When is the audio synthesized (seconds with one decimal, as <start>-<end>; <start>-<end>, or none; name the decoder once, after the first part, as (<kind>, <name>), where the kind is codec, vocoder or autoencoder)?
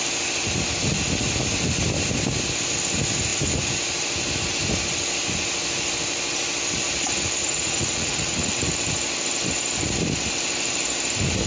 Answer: 7.4-8.5 (vocoder, Vocos)